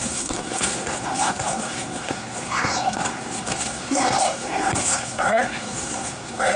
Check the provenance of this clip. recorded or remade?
remade